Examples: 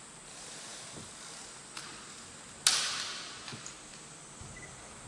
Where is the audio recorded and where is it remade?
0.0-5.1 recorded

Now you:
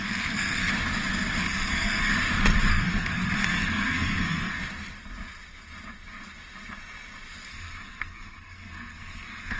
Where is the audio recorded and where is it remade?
0.0-0.7 remade; 0.7-1.4 recorded; 1.4-2.1 remade; 2.1-2.7 recorded; 2.7-4.6 remade; 4.6-7.5 recorded; 7.5-9.6 remade

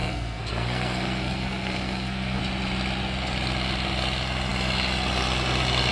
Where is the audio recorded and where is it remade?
0.0-2.4 remade; 2.4-5.9 recorded

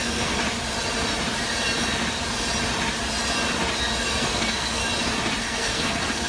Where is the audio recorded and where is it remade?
0.0-0.4 remade; 0.4-4.1 recorded; 4.1-4.8 remade; 4.8-5.4 recorded; 5.4-6.3 remade